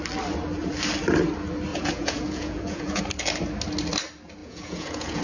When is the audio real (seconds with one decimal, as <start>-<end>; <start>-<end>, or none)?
0.0-1.7; 3.0-4.4

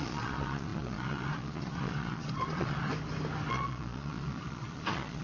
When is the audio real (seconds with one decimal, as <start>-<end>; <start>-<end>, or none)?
2.9-3.5

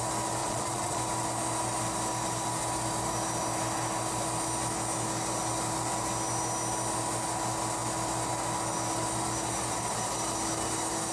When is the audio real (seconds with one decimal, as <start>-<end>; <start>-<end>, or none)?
0.0-0.4; 1.0-11.1